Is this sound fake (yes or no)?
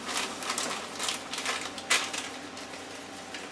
no